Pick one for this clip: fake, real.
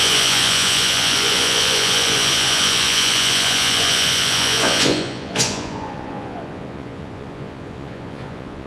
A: fake